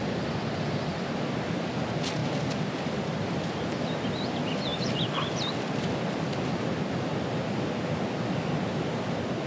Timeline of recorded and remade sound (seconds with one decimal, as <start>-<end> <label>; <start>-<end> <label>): 0.0-2.2 recorded; 2.2-3.6 remade; 3.6-4.7 recorded; 4.7-6.0 remade; 6.0-9.5 recorded